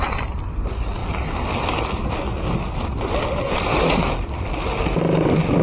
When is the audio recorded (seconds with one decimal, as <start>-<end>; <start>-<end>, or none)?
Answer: 0.0-5.6